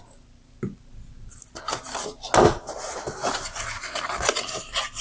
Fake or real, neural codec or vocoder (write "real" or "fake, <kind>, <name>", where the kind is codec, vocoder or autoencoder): real